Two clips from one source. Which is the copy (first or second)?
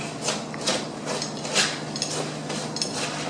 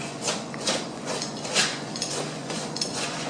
second